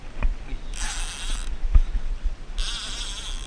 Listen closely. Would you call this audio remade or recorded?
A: recorded